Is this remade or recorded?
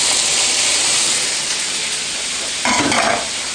recorded